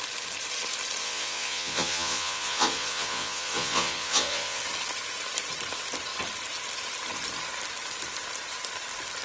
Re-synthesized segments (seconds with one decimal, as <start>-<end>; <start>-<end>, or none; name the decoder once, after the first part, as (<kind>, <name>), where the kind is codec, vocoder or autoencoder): 1.0-4.6 (vocoder, Vocos)